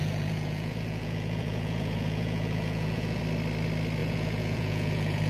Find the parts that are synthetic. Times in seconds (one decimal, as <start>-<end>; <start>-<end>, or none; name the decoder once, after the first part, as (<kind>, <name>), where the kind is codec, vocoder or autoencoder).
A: 0.0-3.2 (vocoder, Vocos); 4.0-5.3